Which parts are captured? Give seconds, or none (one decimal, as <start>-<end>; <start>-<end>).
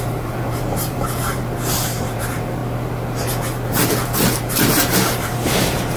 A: 2.6-4.3